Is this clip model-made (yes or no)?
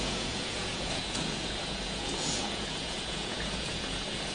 yes